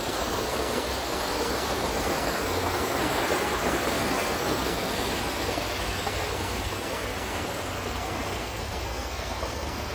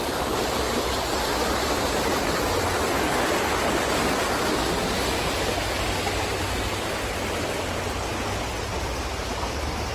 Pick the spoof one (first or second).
first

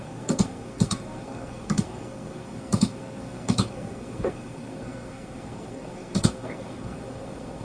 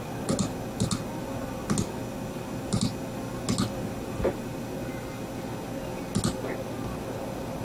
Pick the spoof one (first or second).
first